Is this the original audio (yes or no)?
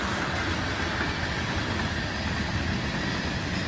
yes